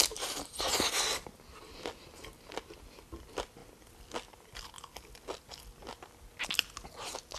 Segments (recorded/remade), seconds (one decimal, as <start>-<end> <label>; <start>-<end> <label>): 0.0-7.4 recorded